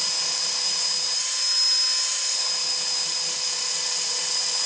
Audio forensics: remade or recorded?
recorded